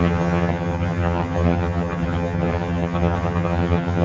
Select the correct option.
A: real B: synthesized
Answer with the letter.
B